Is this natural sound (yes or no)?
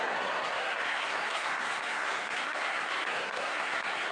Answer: no